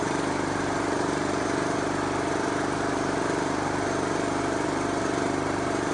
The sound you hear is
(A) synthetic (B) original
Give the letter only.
A